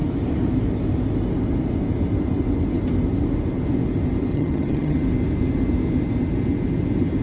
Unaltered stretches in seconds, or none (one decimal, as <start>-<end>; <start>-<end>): 0.0-4.3; 5.0-7.2